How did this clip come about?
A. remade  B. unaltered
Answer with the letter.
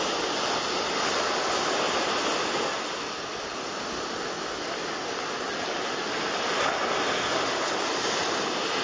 B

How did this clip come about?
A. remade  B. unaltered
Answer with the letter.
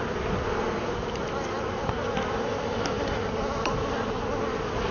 A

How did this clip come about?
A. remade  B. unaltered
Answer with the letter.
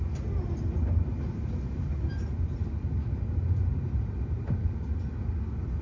B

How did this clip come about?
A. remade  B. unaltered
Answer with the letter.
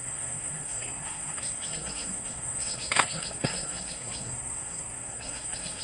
A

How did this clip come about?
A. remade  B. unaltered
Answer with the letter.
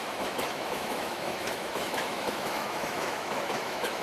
A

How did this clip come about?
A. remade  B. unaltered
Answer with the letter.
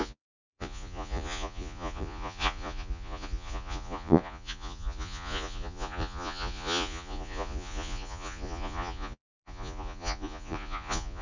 A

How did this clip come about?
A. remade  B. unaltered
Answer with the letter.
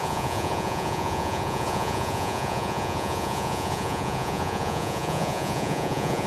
A